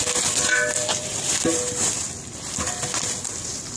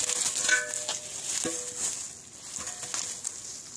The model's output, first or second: first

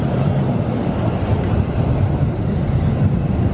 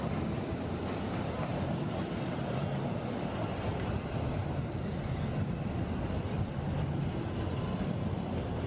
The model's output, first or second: first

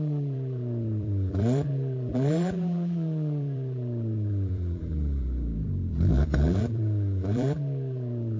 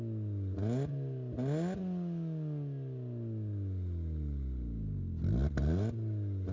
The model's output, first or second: first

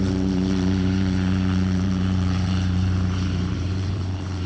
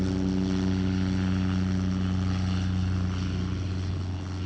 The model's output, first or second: first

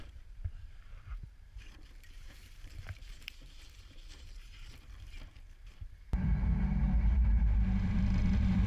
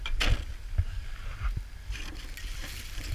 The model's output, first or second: first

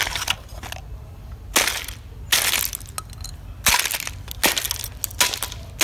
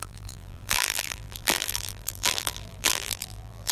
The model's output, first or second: second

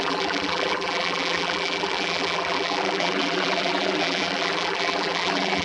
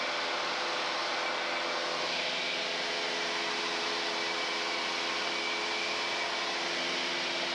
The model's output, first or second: first